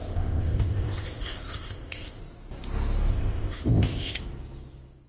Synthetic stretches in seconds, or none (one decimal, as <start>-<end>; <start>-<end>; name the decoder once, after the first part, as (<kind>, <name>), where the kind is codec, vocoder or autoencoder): 0.0-2.2 (codec, ZipCodec); 3.1-4.2